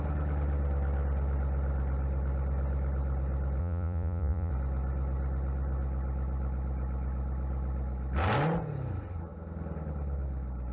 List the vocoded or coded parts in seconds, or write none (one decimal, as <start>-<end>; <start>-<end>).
3.6-4.5